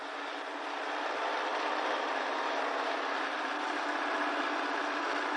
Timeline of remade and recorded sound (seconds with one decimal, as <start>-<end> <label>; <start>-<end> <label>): 0.0-5.4 recorded